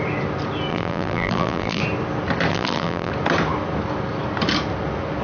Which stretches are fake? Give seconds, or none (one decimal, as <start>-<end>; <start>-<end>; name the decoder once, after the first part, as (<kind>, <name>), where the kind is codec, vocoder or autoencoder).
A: 0.7-1.8 (vocoder, BigVGAN v2); 2.5-3.1